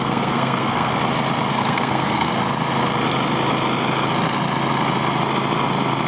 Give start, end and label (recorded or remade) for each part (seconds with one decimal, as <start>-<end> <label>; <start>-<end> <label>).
0.0-0.9 remade; 0.9-1.5 recorded; 1.5-2.3 remade; 2.3-6.1 recorded